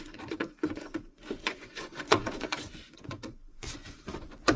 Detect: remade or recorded remade